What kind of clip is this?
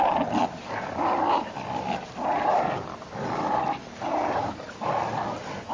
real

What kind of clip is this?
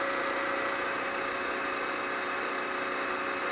real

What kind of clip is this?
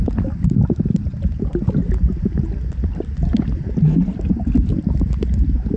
fake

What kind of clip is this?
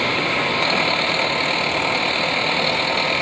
real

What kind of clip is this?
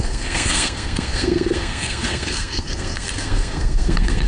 fake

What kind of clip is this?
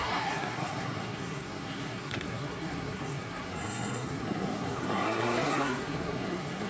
fake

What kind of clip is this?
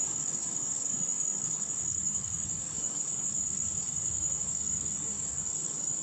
fake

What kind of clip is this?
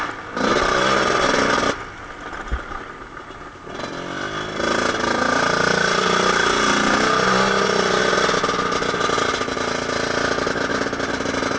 real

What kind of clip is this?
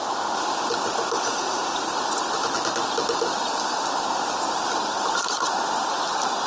real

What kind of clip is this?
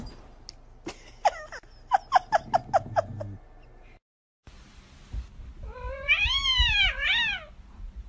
real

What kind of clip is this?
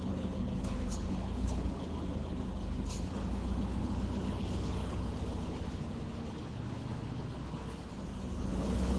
fake